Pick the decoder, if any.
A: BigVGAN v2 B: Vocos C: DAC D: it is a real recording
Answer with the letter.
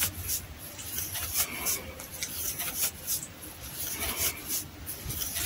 D